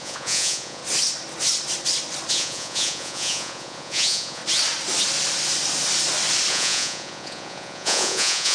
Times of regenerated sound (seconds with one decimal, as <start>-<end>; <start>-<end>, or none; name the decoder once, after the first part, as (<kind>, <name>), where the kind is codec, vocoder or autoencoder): 0.0-0.8 (vocoder, Vocos); 2.3-4.4; 6.5-8.5